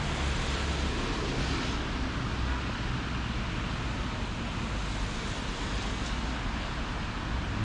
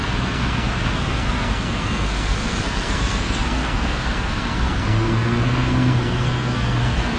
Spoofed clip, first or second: second